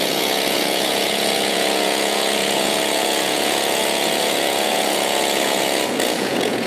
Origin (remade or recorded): remade